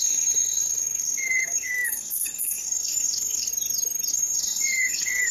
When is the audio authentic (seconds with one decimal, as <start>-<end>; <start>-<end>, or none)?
3.5-4.1